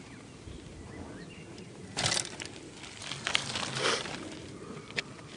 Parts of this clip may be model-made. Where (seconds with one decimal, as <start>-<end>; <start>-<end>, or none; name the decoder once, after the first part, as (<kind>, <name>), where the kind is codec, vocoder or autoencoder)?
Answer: 0.0-3.0 (vocoder, BigVGAN v2); 3.5-5.4